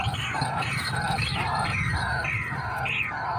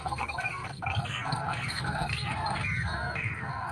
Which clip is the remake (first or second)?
second